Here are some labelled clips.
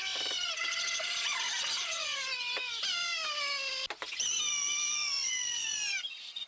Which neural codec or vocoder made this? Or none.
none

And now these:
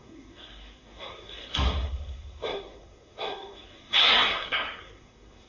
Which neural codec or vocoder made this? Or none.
codec, SNAC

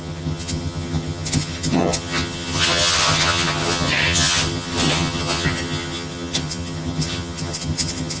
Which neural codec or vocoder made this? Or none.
vocoder, HiFi-GAN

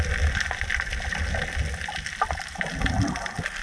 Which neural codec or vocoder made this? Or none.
none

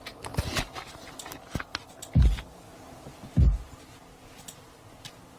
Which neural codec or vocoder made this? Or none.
none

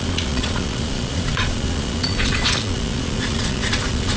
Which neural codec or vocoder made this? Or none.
vocoder, Vocos